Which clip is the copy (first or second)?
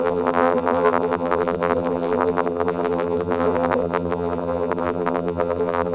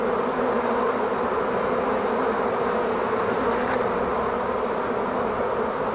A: first